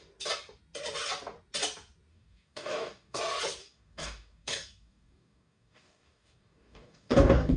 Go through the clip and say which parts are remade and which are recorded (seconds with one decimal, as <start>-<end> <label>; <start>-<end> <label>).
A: 0.0-2.1 recorded; 2.1-3.2 remade; 3.2-3.6 recorded; 3.6-7.6 remade